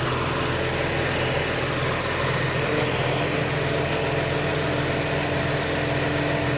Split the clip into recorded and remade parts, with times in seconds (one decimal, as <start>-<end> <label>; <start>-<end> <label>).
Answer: 0.0-6.6 recorded